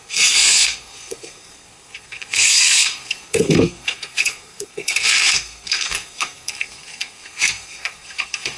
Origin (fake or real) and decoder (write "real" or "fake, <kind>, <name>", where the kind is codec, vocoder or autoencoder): fake, codec, SNAC